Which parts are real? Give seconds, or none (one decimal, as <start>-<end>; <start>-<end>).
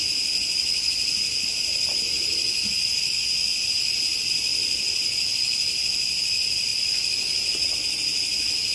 0.0-8.7